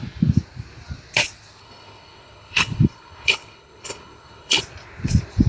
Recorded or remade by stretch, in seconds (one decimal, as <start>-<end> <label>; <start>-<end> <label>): 0.0-1.6 recorded; 1.6-4.6 remade; 4.6-5.5 recorded